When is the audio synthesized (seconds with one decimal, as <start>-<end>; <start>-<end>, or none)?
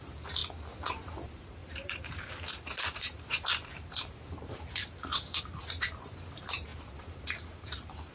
0.0-0.4; 0.9-8.1